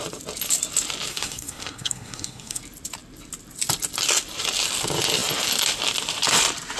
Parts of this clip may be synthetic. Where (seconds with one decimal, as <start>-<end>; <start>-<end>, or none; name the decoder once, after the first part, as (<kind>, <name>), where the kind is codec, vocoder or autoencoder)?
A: 1.1-2.6 (codec, SNAC)